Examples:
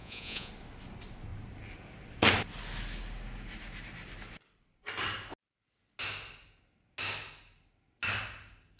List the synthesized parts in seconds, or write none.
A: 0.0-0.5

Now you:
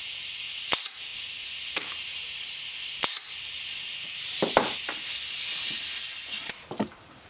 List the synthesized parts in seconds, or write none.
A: 3.9-4.7

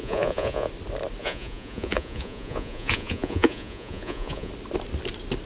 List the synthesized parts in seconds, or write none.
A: 0.0-0.7; 1.2-4.5

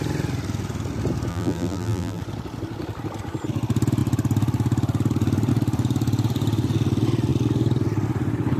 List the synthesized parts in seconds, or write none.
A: 1.3-2.2